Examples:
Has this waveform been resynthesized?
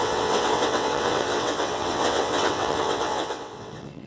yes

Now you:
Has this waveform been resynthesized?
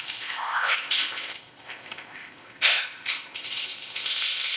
yes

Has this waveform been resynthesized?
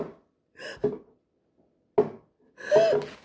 no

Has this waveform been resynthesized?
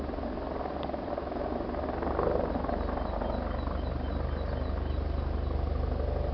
no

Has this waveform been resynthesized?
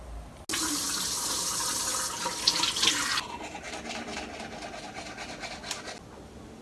no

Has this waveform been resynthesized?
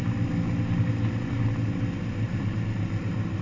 no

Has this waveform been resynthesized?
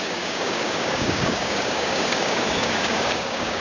yes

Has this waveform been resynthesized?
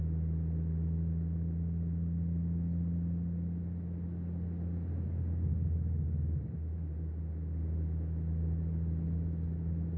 no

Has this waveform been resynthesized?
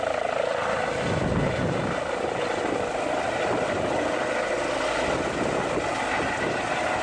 no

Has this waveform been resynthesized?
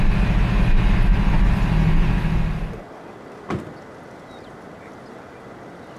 no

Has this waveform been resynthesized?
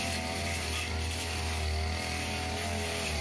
no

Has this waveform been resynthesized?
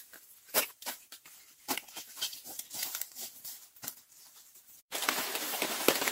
yes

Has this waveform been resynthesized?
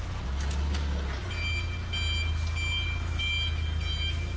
no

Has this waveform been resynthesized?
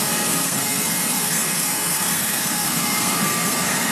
yes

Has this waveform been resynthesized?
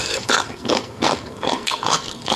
yes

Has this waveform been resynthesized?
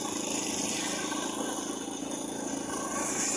no